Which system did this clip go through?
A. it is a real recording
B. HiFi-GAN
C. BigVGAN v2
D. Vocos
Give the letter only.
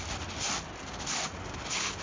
A